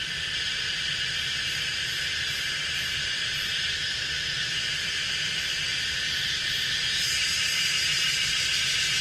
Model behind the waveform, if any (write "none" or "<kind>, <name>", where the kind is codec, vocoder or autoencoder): vocoder, BigVGAN v2